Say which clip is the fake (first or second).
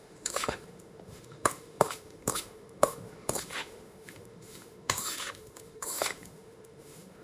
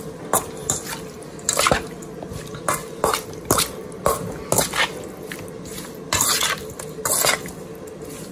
first